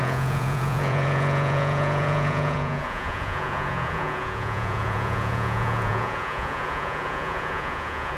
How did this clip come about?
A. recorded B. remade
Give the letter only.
B